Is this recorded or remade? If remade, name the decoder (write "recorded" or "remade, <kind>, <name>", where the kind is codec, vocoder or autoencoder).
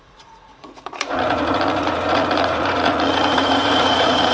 remade, vocoder, Vocos